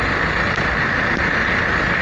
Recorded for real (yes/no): yes